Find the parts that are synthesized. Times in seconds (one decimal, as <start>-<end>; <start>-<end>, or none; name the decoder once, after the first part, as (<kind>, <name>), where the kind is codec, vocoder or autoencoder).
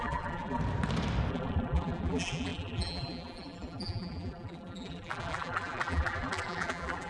0.0-0.6 (vocoder, BigVGAN v2); 1.3-7.1